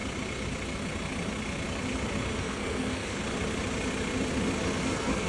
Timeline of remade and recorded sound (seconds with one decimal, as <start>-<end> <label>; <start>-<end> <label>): 0.0-2.4 recorded; 2.4-3.2 remade; 3.2-4.8 recorded; 4.8-5.3 remade